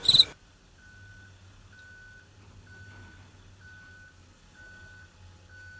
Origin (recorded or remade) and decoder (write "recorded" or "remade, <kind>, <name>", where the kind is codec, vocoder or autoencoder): recorded